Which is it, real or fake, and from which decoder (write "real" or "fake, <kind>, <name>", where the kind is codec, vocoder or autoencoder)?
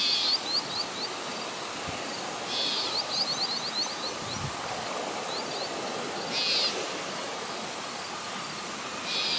real